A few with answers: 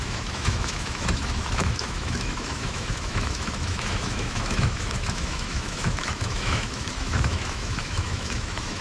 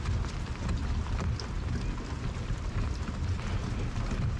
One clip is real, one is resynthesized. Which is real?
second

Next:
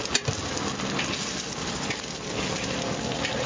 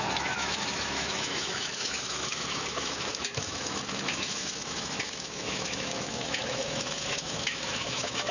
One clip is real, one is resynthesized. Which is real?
first